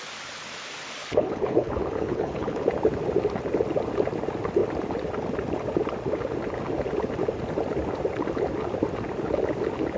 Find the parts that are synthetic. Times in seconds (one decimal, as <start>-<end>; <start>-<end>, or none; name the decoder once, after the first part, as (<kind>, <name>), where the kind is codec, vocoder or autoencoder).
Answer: 1.0-2.6 (codec, HILCodec)